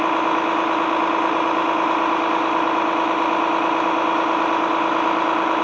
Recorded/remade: recorded